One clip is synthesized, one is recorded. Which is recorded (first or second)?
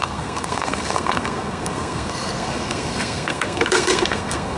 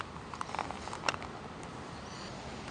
second